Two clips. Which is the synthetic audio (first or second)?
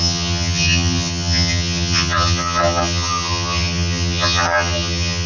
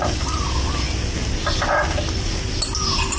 first